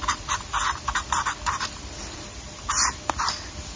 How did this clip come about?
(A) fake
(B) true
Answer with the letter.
A